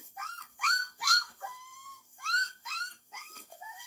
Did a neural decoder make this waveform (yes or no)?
yes